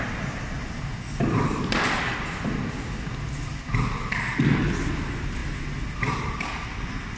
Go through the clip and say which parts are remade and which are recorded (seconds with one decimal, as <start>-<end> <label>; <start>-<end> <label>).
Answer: 0.0-1.3 recorded; 1.3-3.1 remade; 3.1-7.2 recorded